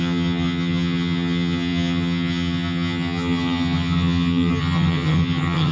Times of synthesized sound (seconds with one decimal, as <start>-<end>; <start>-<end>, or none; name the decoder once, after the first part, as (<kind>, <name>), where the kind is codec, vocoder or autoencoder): 0.0-5.7 (vocoder, HiFi-GAN)